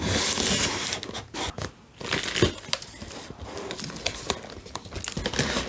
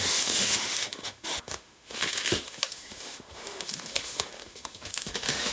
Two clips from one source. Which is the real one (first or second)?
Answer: first